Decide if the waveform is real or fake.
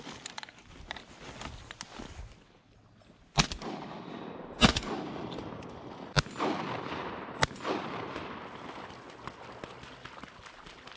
real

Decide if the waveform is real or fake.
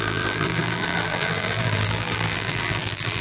fake